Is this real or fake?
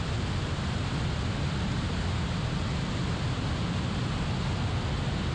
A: real